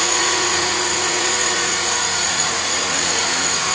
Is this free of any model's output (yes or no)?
no